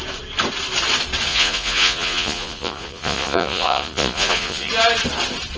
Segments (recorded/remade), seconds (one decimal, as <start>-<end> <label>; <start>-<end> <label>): 0.0-1.3 recorded; 1.3-4.7 remade; 4.7-5.6 recorded